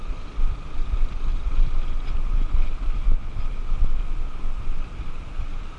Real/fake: real